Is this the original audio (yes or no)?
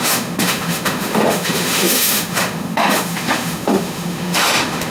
no